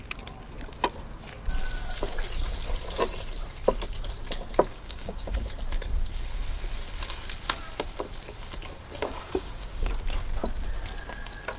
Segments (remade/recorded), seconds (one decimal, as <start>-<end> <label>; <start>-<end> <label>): 0.0-4.7 recorded; 4.7-5.5 remade; 5.5-9.0 recorded; 9.0-9.9 remade; 9.9-11.6 recorded

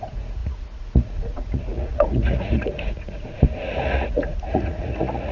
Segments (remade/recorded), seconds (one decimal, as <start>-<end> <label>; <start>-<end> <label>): 0.0-5.3 remade

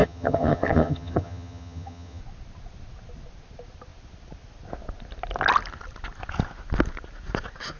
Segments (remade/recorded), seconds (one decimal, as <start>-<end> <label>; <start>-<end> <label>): 0.0-2.2 remade; 2.2-7.8 recorded

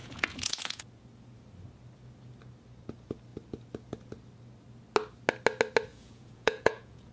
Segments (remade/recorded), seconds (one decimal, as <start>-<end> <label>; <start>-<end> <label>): 0.0-0.8 remade; 0.8-5.9 recorded; 5.9-7.1 remade

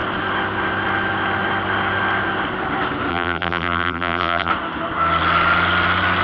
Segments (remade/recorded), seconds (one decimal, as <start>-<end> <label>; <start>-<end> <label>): 0.0-3.1 recorded; 3.1-4.5 remade; 4.5-6.2 recorded

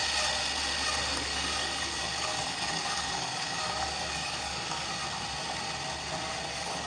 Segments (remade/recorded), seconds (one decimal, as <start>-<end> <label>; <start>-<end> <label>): 0.0-1.1 recorded; 1.1-5.0 remade; 5.0-6.5 recorded; 6.5-6.9 remade

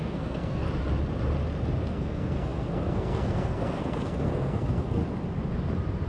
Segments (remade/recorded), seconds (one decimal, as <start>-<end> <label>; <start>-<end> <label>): 0.0-0.6 remade; 0.6-1.9 recorded; 1.9-5.0 remade; 5.0-6.1 recorded

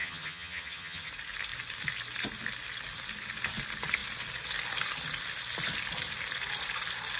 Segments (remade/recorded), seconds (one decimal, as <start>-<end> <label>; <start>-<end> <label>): 0.0-1.1 remade; 1.1-7.2 recorded